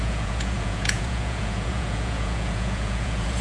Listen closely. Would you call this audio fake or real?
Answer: fake